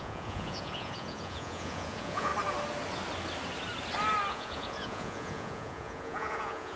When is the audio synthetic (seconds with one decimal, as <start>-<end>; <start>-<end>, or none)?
0.0-2.3; 4.3-6.8